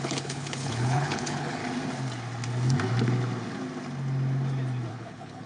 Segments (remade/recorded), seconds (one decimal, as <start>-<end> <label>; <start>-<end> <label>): 0.0-1.6 remade; 1.6-4.9 recorded; 4.9-5.5 remade

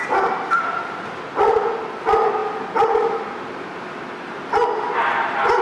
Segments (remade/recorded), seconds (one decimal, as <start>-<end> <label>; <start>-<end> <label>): 0.0-5.6 recorded